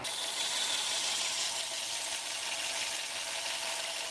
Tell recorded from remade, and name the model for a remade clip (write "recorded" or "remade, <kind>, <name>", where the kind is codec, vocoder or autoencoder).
recorded